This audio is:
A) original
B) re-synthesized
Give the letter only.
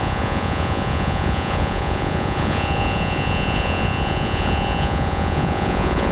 B